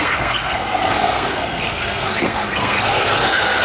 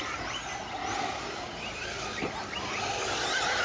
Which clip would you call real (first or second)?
second